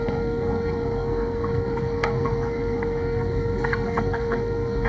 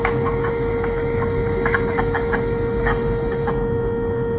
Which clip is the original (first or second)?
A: second